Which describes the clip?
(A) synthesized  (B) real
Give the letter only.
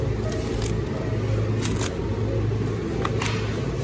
B